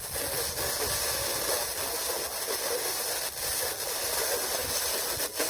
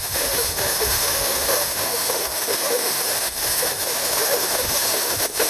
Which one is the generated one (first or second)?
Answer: second